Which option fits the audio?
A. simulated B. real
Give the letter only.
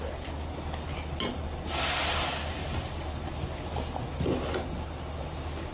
B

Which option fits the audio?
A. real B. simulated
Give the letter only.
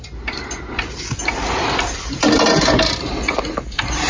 A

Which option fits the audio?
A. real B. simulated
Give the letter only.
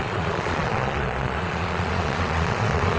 B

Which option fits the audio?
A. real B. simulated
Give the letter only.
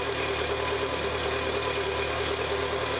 A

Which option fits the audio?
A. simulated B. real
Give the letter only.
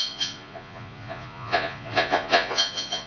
A